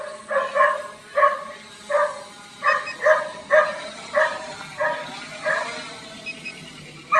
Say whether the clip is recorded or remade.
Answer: recorded